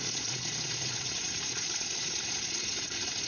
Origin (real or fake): fake